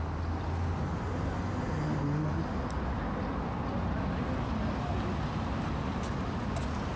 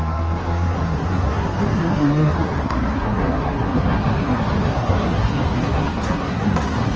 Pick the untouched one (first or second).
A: first